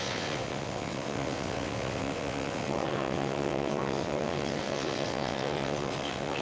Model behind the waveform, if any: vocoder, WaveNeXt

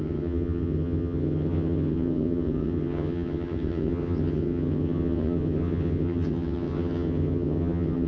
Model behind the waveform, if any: vocoder, HiFi-GAN